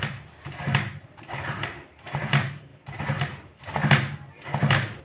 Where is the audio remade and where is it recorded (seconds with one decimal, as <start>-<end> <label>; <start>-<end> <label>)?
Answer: 0.0-5.0 recorded

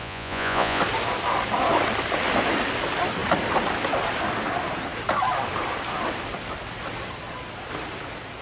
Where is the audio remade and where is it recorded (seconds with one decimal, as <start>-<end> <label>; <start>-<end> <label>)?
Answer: 0.0-0.8 remade; 0.8-8.4 recorded

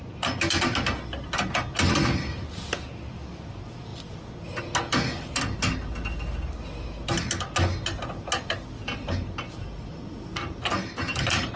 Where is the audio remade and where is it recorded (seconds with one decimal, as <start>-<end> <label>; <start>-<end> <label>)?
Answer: 0.0-11.6 recorded